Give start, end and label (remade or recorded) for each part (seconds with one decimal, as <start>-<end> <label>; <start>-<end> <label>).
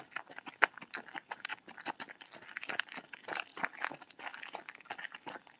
0.0-5.6 recorded